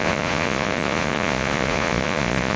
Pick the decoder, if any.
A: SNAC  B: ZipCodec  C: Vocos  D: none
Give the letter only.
C